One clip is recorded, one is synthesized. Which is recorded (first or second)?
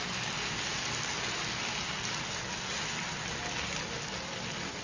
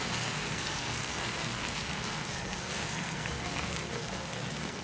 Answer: first